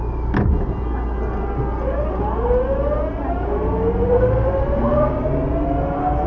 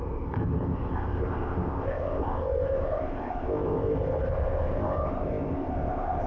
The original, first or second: first